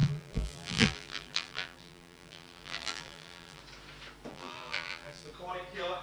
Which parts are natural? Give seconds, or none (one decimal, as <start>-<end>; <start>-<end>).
3.6-4.3; 5.3-6.0